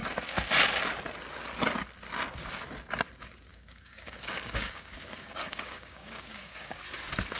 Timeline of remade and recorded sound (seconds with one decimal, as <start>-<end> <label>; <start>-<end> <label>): 0.0-3.5 recorded; 3.5-6.8 remade; 6.8-7.4 recorded